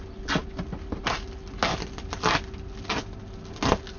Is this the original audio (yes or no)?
yes